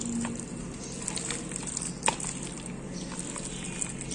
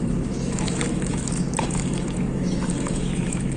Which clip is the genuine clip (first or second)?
first